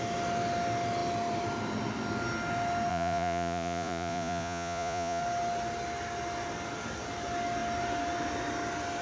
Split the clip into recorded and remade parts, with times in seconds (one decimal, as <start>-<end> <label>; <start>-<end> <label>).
0.0-2.9 recorded; 2.9-5.2 remade; 5.2-9.0 recorded